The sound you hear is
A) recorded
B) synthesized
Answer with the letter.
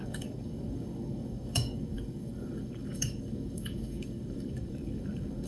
B